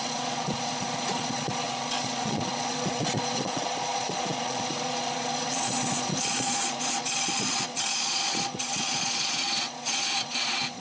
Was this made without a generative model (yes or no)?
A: no